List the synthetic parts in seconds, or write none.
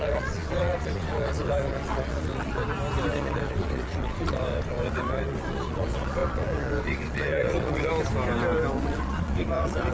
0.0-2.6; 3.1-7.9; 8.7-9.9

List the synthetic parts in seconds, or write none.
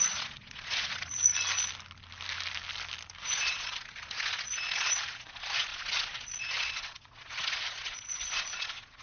0.0-1.3; 3.2-9.0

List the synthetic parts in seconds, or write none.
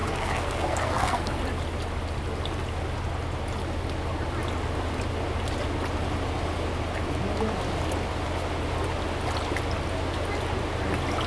0.0-1.4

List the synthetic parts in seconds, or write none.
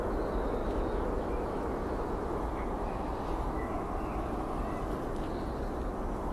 0.6-4.4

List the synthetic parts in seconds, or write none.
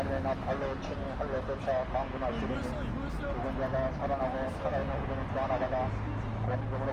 none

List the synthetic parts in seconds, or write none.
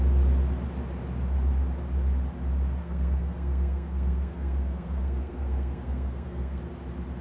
2.8-6.6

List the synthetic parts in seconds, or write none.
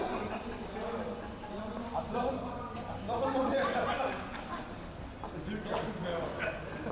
none